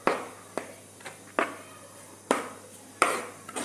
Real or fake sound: fake